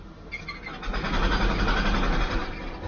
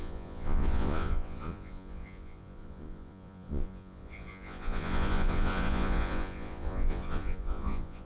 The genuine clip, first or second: first